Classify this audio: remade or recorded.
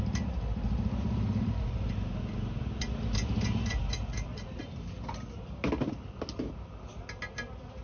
recorded